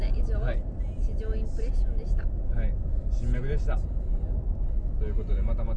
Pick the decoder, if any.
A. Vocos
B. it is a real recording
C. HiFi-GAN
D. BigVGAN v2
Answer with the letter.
B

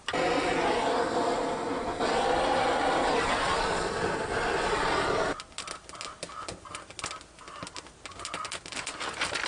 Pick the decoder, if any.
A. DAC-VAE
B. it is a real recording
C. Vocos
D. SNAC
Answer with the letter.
B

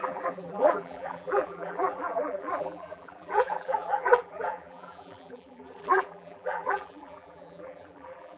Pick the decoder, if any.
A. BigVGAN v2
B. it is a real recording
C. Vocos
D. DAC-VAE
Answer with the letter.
A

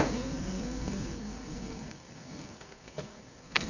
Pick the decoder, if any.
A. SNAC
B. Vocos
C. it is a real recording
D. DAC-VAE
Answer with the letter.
A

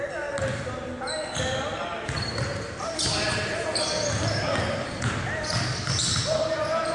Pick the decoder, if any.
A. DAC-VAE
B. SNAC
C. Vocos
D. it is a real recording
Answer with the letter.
D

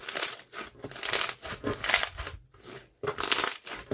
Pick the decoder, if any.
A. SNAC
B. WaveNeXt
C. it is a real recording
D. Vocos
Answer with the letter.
C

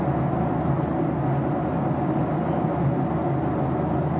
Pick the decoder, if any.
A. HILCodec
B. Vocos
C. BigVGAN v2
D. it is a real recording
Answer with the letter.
D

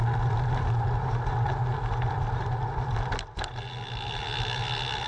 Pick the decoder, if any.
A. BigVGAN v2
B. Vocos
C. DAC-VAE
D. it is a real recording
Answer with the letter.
D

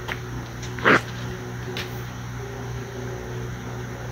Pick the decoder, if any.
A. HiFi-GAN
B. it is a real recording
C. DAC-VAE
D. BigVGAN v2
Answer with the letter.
B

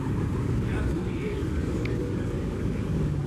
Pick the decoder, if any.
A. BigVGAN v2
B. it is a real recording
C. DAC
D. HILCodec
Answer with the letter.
C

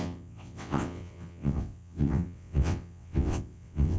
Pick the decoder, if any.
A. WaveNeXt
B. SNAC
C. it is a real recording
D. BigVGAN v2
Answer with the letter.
A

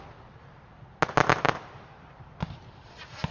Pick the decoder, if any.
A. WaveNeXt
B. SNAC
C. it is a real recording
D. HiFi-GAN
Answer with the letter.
C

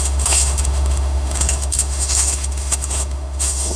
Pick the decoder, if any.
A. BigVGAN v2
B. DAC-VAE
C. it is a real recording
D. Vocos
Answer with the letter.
B